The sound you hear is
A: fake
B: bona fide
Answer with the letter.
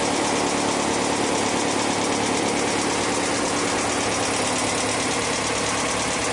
B